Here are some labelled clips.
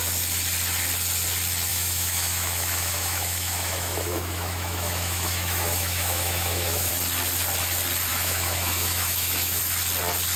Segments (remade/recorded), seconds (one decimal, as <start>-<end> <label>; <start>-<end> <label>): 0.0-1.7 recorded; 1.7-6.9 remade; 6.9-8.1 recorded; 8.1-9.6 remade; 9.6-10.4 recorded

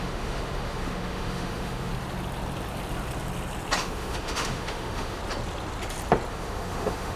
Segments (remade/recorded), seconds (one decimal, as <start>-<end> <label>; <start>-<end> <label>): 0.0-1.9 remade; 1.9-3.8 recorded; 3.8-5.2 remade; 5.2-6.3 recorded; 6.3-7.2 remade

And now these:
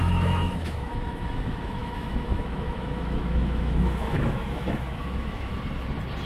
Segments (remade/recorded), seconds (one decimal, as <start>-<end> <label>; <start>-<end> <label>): 0.0-5.5 remade; 5.5-6.3 recorded

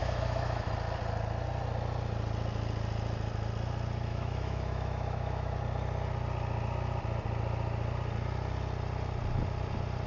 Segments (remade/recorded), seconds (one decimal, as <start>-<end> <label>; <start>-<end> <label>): 0.0-0.7 remade; 0.7-4.1 recorded; 4.1-5.6 remade; 5.6-10.1 recorded

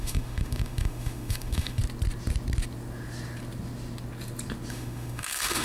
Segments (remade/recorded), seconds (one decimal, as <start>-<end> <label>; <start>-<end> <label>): 0.0-1.8 remade; 1.8-4.7 recorded; 4.7-5.6 remade